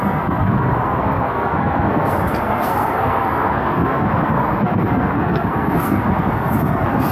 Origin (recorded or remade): remade